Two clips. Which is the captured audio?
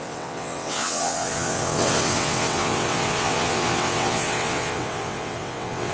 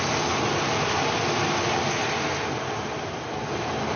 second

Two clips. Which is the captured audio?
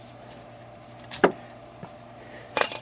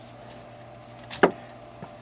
second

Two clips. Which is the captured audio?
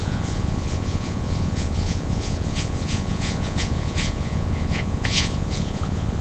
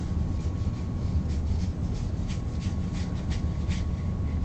second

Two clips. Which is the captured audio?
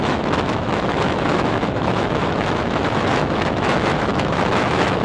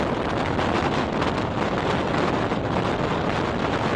second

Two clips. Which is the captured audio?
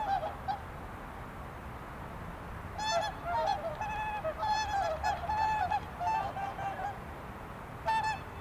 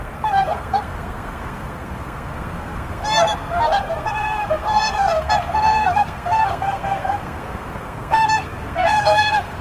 first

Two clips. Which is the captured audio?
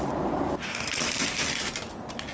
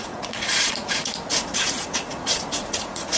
first